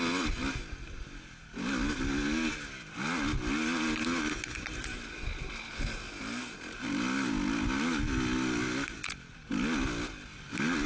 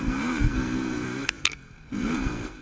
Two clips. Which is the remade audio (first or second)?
second